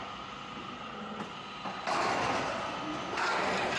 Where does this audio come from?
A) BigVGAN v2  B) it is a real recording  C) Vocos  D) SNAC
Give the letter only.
B